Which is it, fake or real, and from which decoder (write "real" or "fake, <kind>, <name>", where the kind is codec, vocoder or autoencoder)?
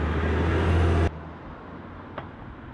real